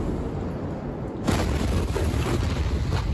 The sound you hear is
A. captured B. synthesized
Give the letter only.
A